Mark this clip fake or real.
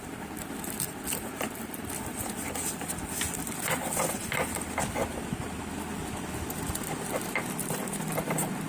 real